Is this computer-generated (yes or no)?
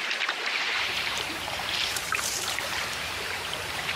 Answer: yes